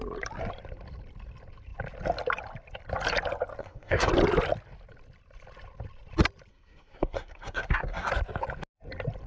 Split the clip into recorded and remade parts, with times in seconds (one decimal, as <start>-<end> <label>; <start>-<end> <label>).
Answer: 0.0-3.6 recorded; 3.6-4.1 remade; 4.1-6.5 recorded; 6.5-8.1 remade; 8.1-9.3 recorded